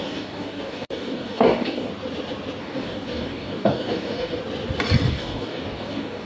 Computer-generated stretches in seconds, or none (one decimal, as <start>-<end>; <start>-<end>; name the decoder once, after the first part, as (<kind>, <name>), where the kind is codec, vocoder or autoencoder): 0.0-1.9 (codec, DAC); 2.6-4.4; 5.1-6.3